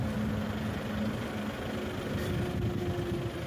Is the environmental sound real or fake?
real